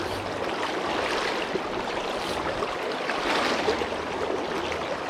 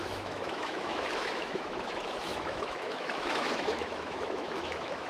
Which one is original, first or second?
first